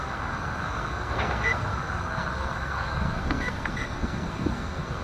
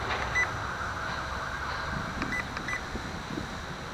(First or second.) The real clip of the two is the second